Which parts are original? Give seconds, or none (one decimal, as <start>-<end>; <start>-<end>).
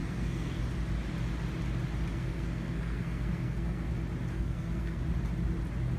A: 0.6-2.1; 3.9-4.3; 5.0-6.0